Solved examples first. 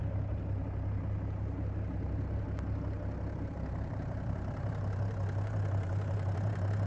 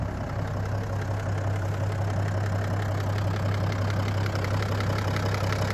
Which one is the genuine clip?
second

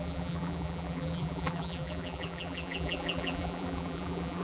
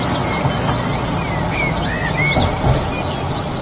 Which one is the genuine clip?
second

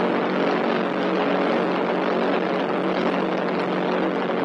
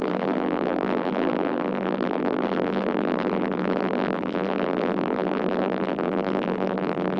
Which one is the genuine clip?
first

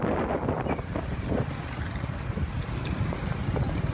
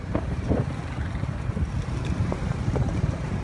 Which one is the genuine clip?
first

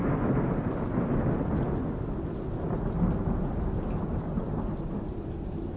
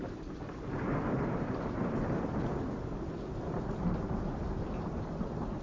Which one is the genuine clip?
first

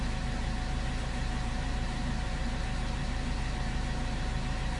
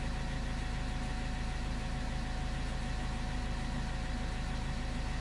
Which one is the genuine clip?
second